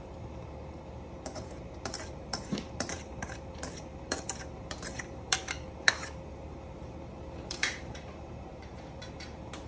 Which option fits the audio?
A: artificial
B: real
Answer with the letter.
A